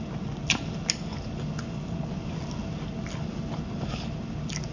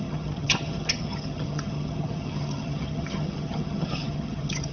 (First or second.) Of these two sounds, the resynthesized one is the second